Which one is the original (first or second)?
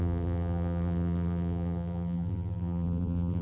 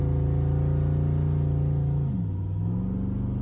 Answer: second